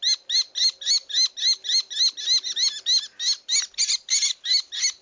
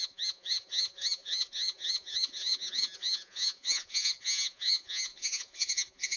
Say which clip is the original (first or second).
first